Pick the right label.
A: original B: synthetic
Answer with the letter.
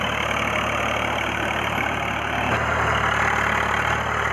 A